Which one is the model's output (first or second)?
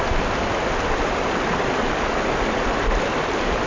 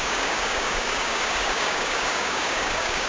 second